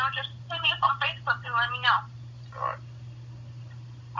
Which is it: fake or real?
real